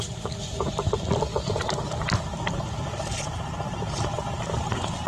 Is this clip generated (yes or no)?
no